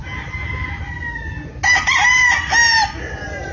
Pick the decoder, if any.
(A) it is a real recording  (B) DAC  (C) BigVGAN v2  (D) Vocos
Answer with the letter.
A